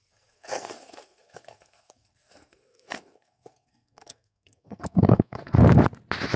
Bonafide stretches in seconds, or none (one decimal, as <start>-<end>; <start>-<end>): 5.6-6.4